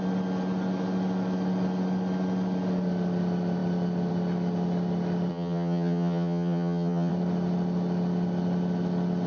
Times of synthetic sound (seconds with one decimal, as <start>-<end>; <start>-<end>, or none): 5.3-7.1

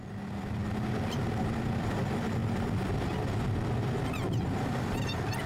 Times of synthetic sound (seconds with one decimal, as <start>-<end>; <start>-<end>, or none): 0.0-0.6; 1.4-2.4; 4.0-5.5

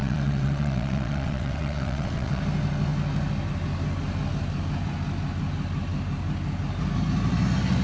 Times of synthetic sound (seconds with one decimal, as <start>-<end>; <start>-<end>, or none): 0.0-2.4

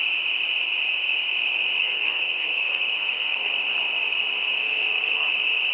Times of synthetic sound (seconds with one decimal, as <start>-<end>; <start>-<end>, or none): 1.8-3.5; 4.6-5.3

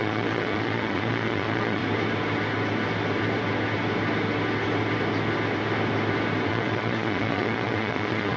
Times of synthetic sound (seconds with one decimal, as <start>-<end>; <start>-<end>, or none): 0.0-1.8; 6.5-8.4

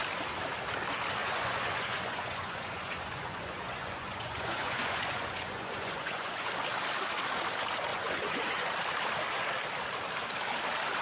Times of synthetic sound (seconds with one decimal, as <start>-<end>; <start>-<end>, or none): 1.2-6.5; 7.9-8.7

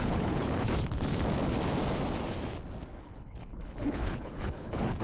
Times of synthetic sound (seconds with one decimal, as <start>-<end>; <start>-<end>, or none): 0.0-0.7; 3.0-5.0